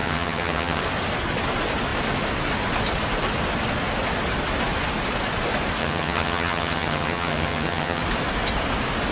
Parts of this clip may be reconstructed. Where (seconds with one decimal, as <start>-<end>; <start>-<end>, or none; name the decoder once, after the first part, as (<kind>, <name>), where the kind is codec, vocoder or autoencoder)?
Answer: 0.0-0.8 (vocoder, HiFi-GAN); 5.8-8.0